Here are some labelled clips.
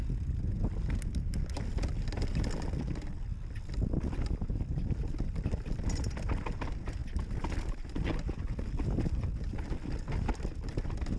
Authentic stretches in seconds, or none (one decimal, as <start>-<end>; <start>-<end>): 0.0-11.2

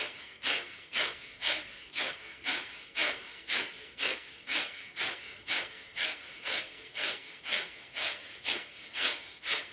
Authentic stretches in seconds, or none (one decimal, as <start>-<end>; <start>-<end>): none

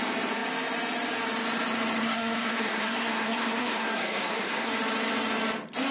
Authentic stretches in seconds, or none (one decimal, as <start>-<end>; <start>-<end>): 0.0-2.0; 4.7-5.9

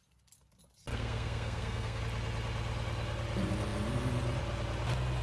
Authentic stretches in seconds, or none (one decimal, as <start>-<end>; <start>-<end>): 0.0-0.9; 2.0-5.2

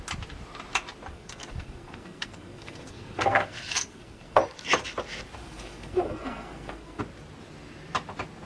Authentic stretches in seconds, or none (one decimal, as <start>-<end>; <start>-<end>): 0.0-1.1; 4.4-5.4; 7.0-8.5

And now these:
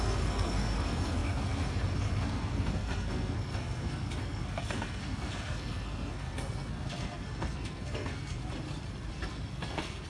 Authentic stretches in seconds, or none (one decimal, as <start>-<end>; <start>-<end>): 8.4-9.1